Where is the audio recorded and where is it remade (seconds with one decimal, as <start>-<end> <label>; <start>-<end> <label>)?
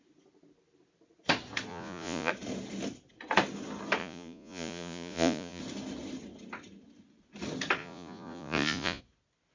0.0-1.7 recorded; 1.7-2.3 remade; 2.3-4.0 recorded; 4.0-5.6 remade; 5.6-7.8 recorded; 7.8-9.0 remade; 9.0-9.5 recorded